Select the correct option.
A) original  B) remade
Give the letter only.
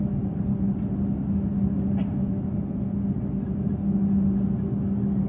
A